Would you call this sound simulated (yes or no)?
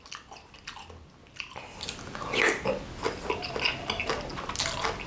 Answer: no